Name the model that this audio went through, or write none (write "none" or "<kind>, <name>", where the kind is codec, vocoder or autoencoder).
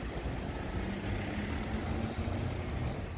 none